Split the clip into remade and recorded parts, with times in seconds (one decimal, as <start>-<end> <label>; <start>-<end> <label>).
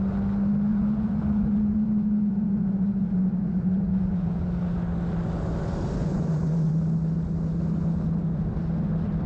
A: 0.0-0.7 recorded; 0.7-4.4 remade; 4.4-6.0 recorded; 6.0-6.7 remade; 6.7-9.3 recorded